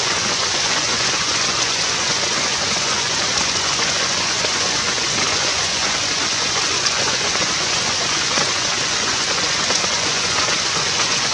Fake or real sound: fake